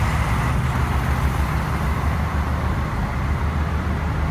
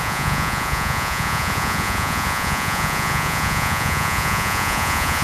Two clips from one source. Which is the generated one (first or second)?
second